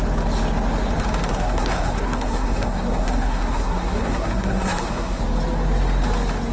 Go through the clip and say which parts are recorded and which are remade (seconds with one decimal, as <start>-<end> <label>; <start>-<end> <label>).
0.0-1.3 recorded; 1.3-5.2 remade; 5.2-6.5 recorded